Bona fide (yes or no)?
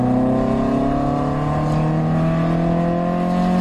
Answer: yes